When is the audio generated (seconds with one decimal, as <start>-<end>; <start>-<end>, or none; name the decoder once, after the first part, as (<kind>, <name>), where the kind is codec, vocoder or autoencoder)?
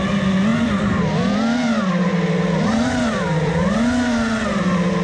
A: 0.5-3.5 (vocoder, BigVGAN v2)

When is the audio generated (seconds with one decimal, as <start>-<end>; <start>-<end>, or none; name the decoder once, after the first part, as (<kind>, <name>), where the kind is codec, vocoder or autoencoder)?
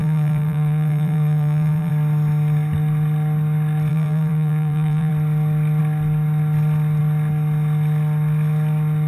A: 0.0-1.9 (vocoder, BigVGAN v2); 3.9-5.1